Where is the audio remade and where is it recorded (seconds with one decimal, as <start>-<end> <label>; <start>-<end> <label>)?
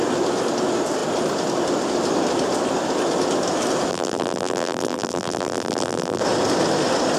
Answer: 0.0-3.9 recorded; 3.9-6.2 remade; 6.2-7.2 recorded